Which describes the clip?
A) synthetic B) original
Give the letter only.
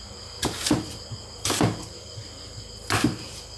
B